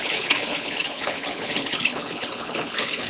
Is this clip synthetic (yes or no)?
yes